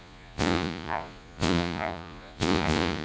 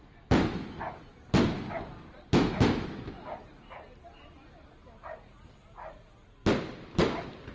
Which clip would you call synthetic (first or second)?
first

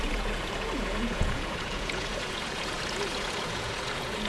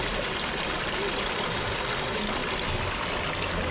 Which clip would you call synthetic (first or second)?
first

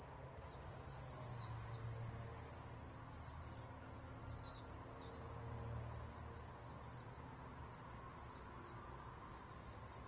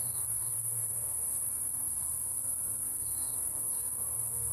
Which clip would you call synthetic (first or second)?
second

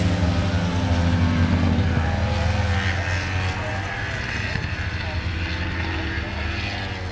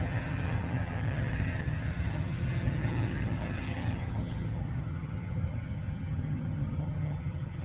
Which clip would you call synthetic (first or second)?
second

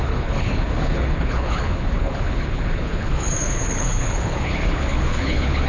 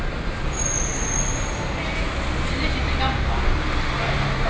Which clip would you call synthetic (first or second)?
first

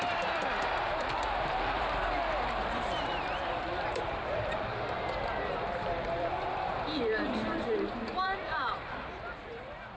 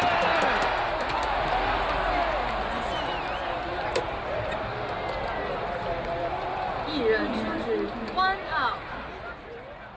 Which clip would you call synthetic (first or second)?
first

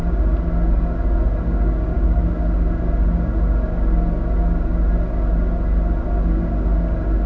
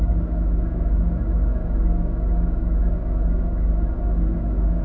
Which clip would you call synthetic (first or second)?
second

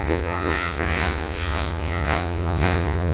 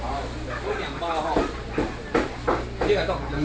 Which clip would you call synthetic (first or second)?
first